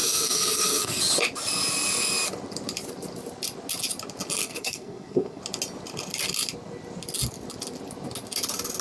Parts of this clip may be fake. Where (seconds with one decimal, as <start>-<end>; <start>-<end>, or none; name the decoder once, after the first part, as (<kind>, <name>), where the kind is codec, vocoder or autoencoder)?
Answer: 0.0-1.0 (codec, SNAC); 4.4-5.4